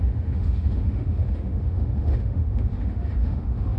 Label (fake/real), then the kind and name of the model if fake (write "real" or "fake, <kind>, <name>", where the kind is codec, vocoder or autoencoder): fake, autoencoder, DAC-VAE